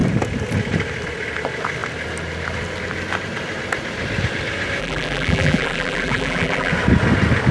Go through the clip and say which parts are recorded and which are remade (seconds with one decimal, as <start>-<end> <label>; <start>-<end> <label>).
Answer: 0.0-4.8 recorded; 4.8-6.7 remade; 6.7-7.5 recorded

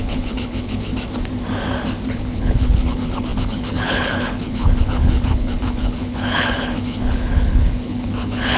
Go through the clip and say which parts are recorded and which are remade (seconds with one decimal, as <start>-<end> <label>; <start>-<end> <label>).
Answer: 0.0-0.9 remade; 0.9-2.1 recorded; 2.1-8.6 remade

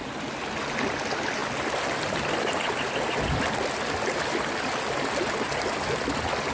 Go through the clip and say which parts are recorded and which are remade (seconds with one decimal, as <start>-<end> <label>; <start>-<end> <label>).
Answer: 0.0-6.5 recorded

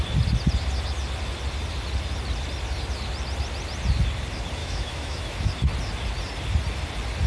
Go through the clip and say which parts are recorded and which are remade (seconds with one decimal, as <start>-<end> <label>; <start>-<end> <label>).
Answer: 0.0-4.6 recorded; 4.6-5.5 remade; 5.5-7.3 recorded